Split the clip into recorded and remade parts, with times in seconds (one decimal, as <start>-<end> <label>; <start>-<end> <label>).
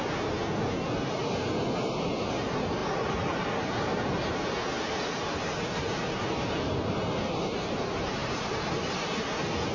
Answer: 0.0-9.7 recorded